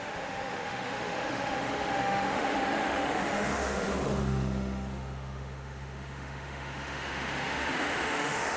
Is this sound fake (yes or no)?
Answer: yes